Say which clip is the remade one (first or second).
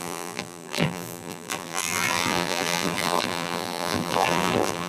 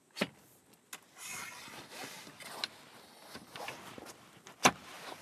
first